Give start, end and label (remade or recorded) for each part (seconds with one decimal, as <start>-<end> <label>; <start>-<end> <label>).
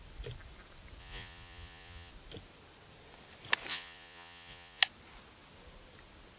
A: 0.0-1.0 recorded; 1.0-2.1 remade; 2.1-3.7 recorded; 3.7-4.8 remade; 4.8-6.4 recorded